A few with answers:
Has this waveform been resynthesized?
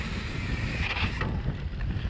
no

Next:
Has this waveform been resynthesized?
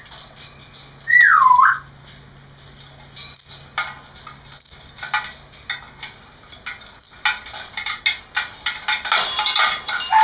no